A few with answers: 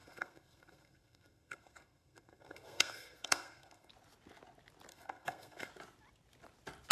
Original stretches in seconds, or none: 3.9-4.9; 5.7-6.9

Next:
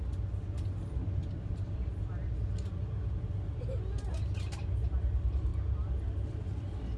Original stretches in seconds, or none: 0.0-7.0

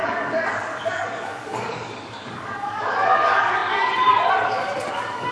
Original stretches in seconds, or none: none